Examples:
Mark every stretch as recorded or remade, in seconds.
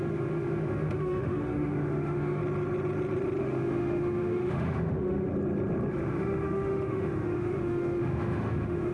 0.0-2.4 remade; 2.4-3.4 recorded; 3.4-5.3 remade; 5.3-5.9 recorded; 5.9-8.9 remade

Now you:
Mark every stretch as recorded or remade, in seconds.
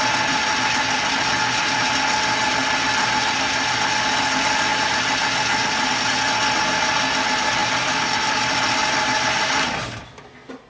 0.0-7.6 recorded; 7.6-10.7 remade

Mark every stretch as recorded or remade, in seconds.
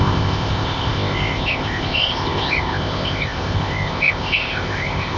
0.0-5.2 remade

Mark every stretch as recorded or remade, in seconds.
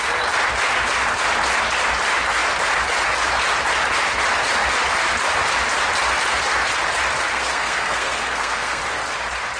0.0-7.3 recorded; 7.3-8.8 remade; 8.8-9.6 recorded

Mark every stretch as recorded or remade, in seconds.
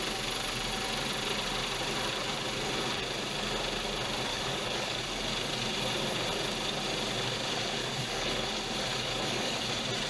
0.0-4.3 recorded; 4.3-5.0 remade; 5.0-7.8 recorded; 7.8-8.5 remade; 8.5-8.9 recorded; 8.9-9.7 remade; 9.7-10.1 recorded